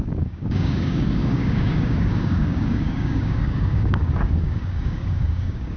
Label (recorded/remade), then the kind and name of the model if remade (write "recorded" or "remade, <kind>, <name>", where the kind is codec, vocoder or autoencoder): remade, codec, DAC